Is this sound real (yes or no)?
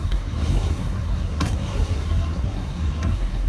no